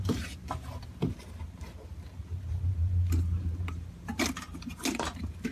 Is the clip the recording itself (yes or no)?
no